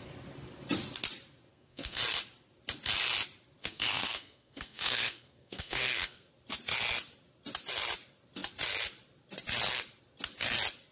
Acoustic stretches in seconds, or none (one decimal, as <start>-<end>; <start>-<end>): 0.0-1.5; 2.0-3.6; 6.3-10.9